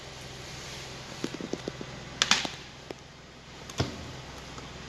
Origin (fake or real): real